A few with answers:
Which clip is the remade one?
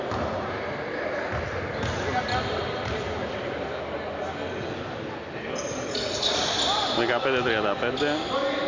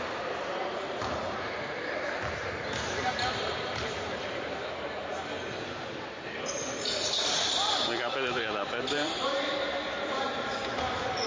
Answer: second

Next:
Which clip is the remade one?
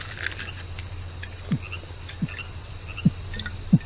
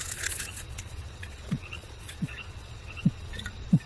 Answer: second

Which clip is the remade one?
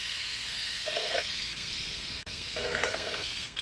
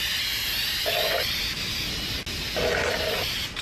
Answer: first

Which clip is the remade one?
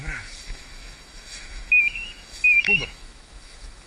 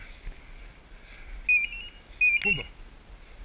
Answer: first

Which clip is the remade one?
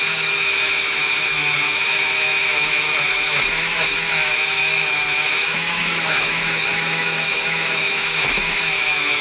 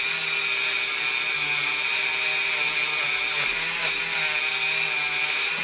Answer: first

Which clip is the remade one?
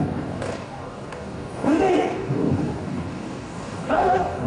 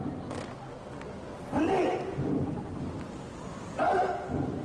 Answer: first